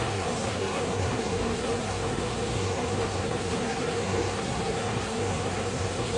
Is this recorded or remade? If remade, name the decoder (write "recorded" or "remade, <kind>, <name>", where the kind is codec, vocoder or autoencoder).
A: remade, codec, SNAC